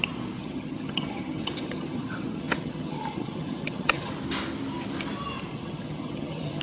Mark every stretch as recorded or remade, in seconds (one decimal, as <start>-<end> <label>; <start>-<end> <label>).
0.0-0.4 recorded; 0.4-4.1 remade; 4.1-5.5 recorded; 5.5-6.6 remade

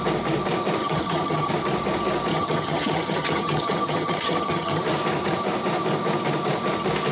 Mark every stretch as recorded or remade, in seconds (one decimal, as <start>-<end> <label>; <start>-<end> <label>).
0.0-0.8 recorded; 0.8-1.5 remade; 1.5-2.3 recorded; 2.3-4.8 remade; 4.8-7.1 recorded

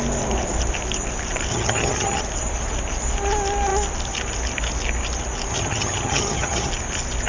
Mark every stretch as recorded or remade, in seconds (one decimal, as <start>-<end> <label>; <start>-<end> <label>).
0.0-1.5 recorded; 1.5-2.2 remade; 2.2-5.5 recorded; 5.5-6.7 remade; 6.7-7.3 recorded